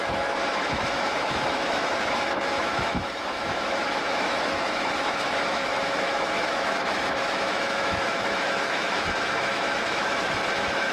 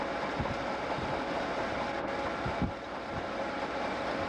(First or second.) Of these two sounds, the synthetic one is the first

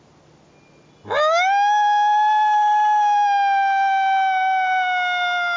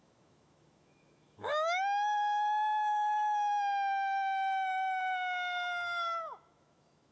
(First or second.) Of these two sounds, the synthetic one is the second